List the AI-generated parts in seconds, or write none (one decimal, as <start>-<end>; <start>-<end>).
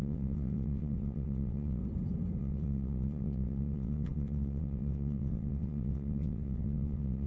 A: 0.0-1.8; 2.4-7.3